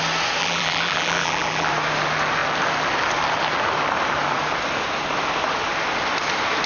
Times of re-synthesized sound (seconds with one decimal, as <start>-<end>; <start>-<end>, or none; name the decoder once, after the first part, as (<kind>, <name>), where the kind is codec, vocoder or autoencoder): 0.4-1.7 (vocoder, BigVGAN v2)